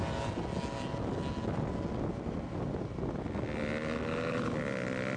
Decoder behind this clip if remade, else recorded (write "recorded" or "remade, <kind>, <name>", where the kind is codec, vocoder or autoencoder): recorded